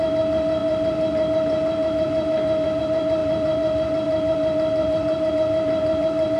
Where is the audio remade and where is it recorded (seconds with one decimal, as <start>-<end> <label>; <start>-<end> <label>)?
0.0-6.4 remade